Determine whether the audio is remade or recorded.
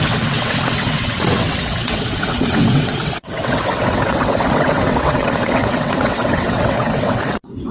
remade